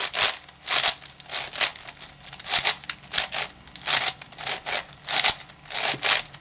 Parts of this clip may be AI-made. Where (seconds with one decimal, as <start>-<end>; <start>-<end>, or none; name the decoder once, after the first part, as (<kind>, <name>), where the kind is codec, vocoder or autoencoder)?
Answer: none